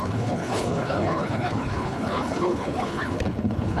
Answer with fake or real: fake